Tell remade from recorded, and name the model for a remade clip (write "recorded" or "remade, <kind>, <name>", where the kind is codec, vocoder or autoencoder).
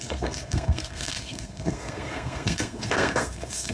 remade, codec, SNAC